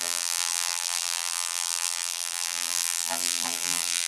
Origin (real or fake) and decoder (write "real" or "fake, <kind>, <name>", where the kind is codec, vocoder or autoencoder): fake, vocoder, BigVGAN v2